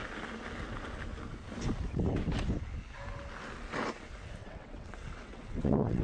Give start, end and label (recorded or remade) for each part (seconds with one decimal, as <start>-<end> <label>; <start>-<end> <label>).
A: 0.0-4.4 recorded; 4.4-6.0 remade

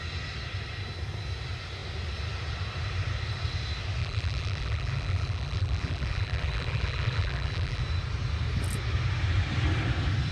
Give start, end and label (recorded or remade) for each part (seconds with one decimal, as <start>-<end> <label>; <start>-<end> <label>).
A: 0.0-4.0 recorded; 4.0-7.8 remade; 7.8-10.3 recorded

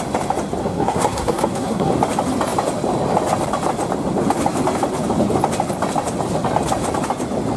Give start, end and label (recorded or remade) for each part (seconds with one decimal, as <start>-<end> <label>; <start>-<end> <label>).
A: 0.0-0.6 recorded; 0.6-1.9 remade; 1.9-7.6 recorded

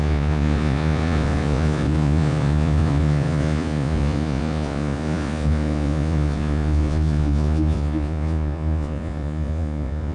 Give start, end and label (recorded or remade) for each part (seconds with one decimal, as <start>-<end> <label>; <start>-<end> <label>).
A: 0.0-10.1 remade

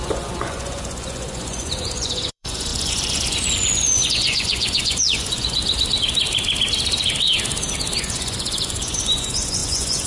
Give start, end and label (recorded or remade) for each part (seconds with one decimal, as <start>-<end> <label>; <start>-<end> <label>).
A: 0.0-5.6 remade; 5.6-8.0 recorded; 8.0-10.1 remade

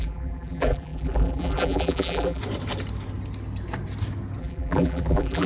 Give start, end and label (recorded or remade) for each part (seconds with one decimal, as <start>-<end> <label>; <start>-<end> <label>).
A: 0.0-2.4 remade; 2.4-4.4 recorded; 4.4-5.5 remade

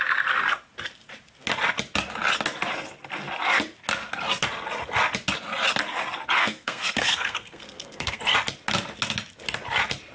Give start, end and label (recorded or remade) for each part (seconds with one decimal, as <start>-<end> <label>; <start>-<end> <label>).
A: 0.0-6.4 recorded; 6.4-8.2 remade; 8.2-10.1 recorded